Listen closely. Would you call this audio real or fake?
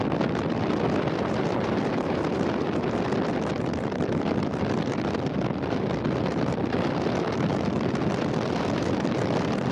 fake